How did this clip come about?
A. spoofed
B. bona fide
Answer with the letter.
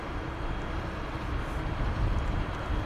B